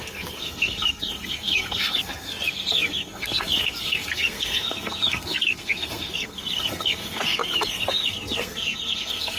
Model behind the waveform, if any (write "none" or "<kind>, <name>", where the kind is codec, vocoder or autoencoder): codec, SNAC